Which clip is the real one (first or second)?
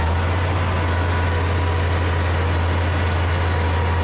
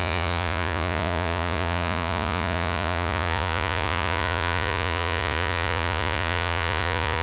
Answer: first